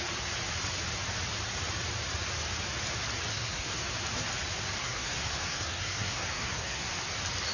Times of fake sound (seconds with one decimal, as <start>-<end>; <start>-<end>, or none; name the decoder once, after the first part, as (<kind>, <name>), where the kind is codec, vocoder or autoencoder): 3.3-3.8 (codec, SNAC); 4.8-6.9